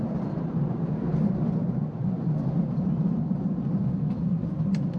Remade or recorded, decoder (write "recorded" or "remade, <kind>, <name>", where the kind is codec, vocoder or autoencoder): recorded